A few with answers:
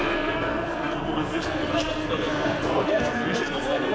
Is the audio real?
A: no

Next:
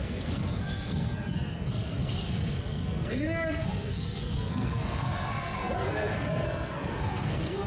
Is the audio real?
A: no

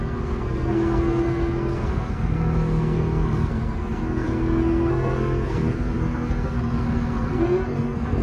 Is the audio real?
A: no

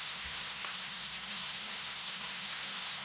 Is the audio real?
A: no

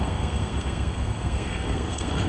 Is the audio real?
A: no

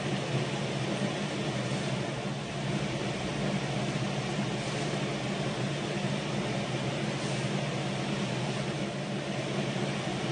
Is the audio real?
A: yes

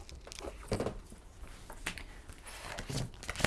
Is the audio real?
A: yes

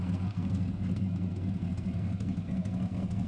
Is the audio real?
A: no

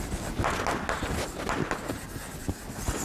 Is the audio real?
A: yes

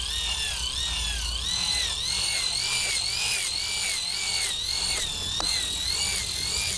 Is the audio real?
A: yes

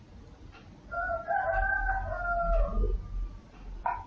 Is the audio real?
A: yes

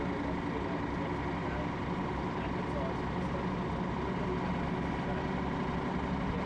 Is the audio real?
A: yes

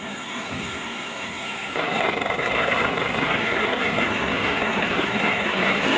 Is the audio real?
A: no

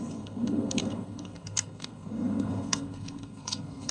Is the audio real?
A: no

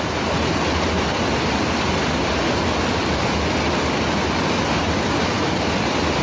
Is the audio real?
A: yes